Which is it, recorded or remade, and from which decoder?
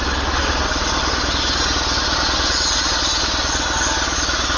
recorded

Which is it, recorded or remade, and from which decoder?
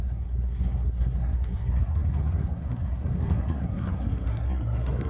remade, codec, SNAC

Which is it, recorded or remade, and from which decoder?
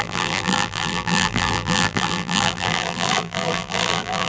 remade, vocoder, BigVGAN v2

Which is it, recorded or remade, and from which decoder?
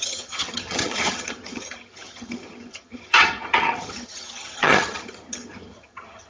remade, vocoder, HiFi-GAN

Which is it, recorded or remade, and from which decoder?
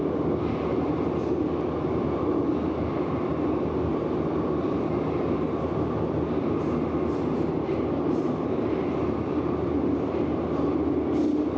recorded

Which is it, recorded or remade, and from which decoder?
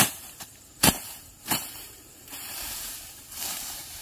remade, vocoder, BigVGAN v2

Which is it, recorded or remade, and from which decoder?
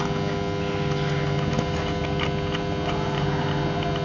recorded